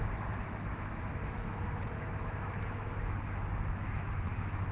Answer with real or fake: fake